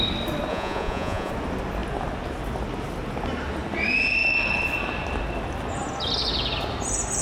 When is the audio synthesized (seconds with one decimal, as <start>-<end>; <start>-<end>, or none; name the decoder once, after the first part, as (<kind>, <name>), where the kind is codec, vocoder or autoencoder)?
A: 0.5-1.3 (vocoder, Vocos)